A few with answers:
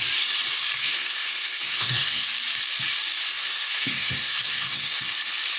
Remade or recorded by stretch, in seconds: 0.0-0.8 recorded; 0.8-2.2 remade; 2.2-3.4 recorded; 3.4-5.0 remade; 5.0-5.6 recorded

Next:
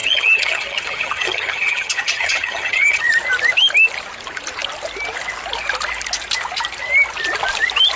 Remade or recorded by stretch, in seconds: 0.0-3.0 remade; 3.0-8.0 recorded

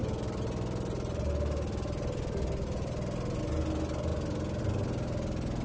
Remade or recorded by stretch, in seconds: 0.0-5.6 recorded